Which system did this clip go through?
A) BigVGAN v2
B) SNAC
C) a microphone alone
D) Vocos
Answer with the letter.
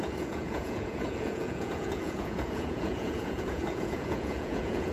D